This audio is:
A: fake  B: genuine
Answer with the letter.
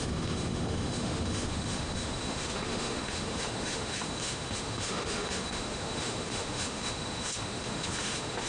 A